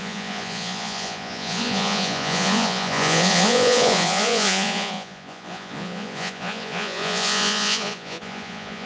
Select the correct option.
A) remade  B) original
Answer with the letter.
A